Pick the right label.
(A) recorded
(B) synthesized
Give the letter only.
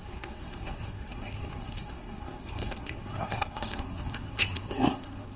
B